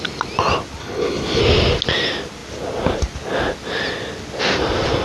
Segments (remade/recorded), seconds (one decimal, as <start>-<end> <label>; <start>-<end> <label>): 0.0-0.8 recorded; 0.8-1.4 remade; 1.4-5.0 recorded